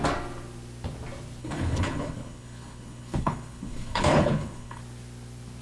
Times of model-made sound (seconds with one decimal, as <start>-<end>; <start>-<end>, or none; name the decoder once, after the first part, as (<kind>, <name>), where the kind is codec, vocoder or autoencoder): 1.4-4.8 (codec, HILCodec)